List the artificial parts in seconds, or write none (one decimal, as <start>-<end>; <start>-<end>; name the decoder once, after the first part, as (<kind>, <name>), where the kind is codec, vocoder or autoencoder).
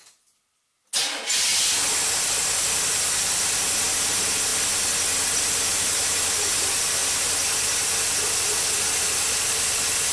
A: none